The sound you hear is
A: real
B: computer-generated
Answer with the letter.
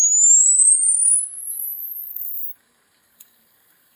B